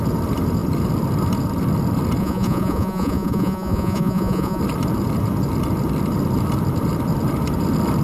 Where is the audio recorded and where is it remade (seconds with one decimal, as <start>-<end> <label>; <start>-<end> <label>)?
0.0-2.2 recorded; 2.2-4.6 remade; 4.6-8.0 recorded